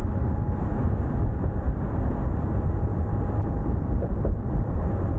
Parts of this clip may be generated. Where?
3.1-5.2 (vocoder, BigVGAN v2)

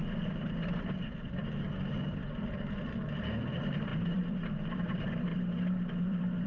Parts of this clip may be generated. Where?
0.0-5.3 (vocoder, BigVGAN v2); 6.0-6.5

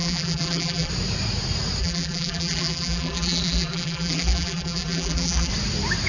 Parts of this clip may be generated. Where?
0.0-0.9 (vocoder, BigVGAN v2); 1.8-5.5

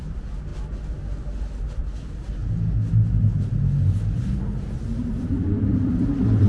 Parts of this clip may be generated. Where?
0.0-0.5 (vocoder, BigVGAN v2); 1.7-2.4; 5.0-6.5

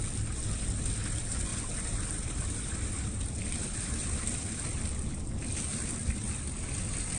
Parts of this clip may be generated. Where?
1.5-4.9 (vocoder, BigVGAN v2)

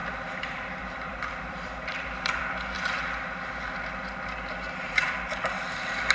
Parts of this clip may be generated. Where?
0.0-3.7 (vocoder, BigVGAN v2)